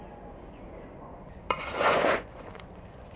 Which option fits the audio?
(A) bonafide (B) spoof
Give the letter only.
B